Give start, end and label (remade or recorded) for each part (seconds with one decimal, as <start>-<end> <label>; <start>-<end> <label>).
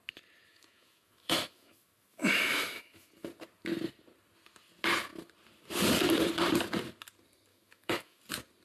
0.0-0.5 recorded; 0.5-3.1 remade; 3.1-7.5 recorded; 7.5-8.2 remade; 8.2-8.6 recorded